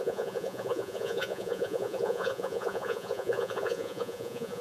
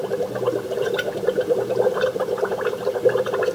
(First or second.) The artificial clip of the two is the first